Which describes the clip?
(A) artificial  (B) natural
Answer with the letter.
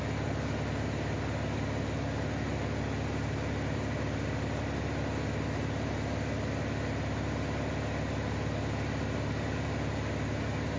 B